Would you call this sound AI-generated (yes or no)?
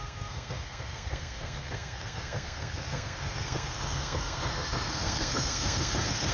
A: yes